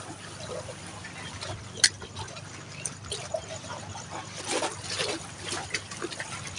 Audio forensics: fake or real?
real